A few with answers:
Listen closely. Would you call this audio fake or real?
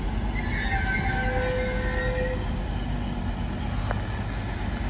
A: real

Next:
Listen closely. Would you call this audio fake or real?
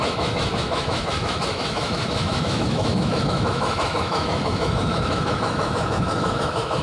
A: fake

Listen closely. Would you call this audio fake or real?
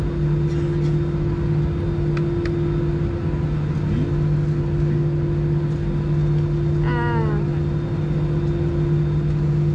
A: real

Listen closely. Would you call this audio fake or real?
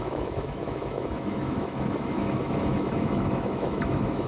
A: fake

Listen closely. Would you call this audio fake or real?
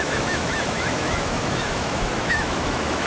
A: fake